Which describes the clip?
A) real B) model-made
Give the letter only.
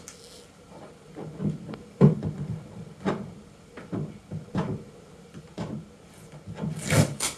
A